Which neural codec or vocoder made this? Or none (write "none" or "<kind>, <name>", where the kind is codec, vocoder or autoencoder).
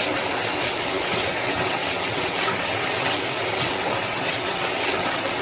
vocoder, WaveNeXt